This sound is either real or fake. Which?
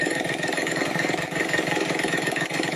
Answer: fake